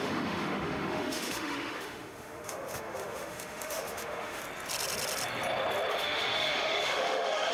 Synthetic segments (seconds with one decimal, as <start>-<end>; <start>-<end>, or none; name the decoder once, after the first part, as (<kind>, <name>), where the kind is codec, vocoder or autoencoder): 0.0-4.4 (autoencoder, DAC-VAE); 5.9-7.5